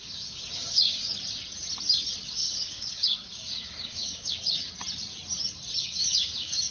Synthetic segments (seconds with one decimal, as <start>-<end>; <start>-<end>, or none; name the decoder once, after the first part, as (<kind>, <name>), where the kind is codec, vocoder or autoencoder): 0.0-1.2 (codec, DAC); 2.4-4.7; 5.8-6.7